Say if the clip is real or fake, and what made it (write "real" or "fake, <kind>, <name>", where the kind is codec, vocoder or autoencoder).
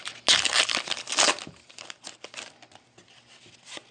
real